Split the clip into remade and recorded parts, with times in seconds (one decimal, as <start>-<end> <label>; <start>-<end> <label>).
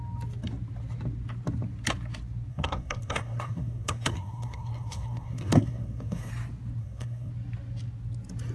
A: 0.0-2.5 recorded; 2.5-6.3 remade; 6.3-6.8 recorded; 6.8-7.3 remade; 7.3-8.5 recorded